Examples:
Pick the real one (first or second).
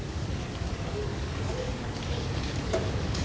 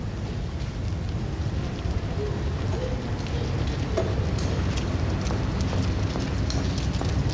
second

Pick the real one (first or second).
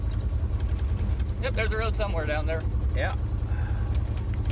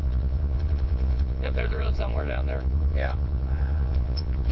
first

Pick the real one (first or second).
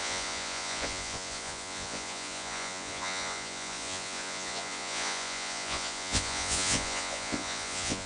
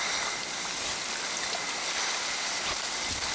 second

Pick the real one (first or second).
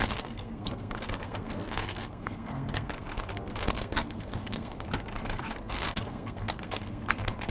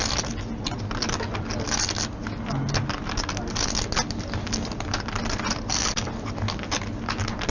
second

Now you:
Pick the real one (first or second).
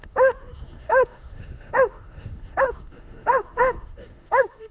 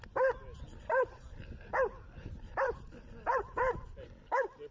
second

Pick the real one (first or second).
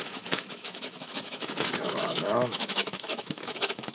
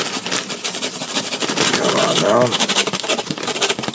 second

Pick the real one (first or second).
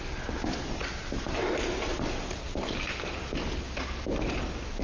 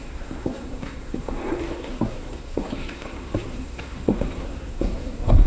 first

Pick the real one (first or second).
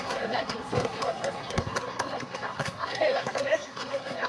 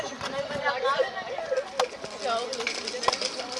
second